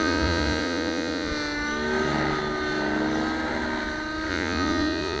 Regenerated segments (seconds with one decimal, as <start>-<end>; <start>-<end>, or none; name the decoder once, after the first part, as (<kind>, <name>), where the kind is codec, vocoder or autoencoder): 0.0-1.3 (vocoder, Vocos); 4.3-5.2